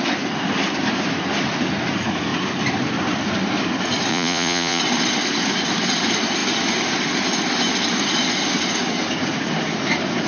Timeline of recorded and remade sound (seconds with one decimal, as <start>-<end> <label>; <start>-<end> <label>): 0.0-4.1 recorded; 4.1-4.8 remade; 4.8-10.3 recorded